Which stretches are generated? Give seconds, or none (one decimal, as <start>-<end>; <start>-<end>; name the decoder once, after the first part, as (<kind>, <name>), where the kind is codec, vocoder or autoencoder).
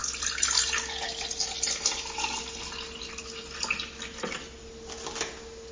none